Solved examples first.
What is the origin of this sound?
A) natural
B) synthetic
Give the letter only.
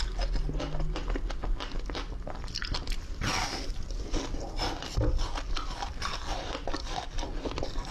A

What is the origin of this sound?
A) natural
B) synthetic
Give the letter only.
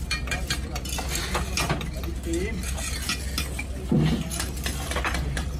A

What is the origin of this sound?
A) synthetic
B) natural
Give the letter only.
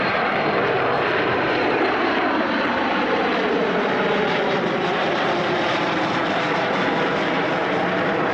A